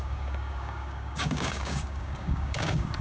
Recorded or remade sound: remade